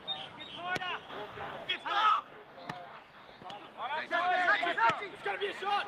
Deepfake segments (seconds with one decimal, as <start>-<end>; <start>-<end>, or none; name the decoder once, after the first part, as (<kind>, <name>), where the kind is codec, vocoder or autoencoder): 1.1-1.7 (codec, DAC); 2.1-3.4